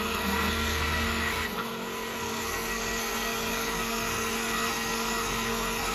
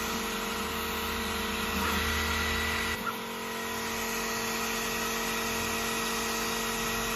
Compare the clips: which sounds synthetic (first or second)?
first